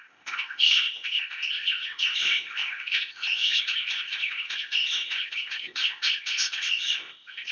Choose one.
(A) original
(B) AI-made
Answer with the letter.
B